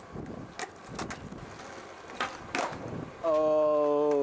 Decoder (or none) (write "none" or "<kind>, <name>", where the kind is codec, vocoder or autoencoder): none